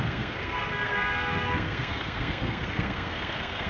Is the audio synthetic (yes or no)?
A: yes